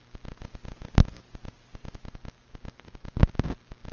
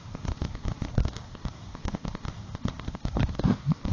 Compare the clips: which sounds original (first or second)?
first